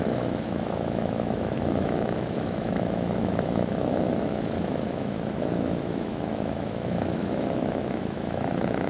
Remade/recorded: remade